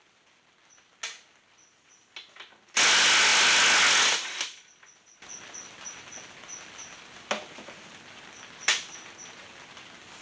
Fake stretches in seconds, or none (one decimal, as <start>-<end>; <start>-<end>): none